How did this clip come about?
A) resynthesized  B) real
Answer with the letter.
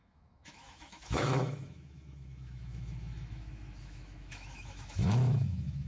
A